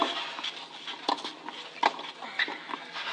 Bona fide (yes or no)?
yes